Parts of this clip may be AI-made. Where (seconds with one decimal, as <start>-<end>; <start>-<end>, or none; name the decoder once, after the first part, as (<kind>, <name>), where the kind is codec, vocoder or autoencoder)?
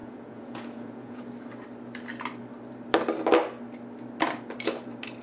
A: 0.0-1.2 (vocoder, Vocos)